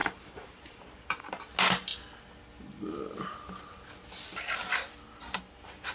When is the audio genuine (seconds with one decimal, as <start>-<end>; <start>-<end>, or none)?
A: 1.4-5.9